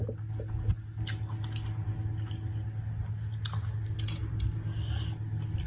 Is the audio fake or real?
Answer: real